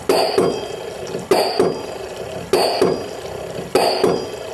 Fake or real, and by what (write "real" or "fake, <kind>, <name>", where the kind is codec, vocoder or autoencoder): real